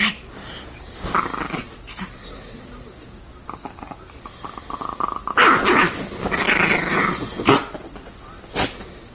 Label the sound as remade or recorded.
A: recorded